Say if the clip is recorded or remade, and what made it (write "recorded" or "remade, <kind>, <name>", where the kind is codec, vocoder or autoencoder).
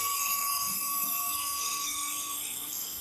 remade, codec, SNAC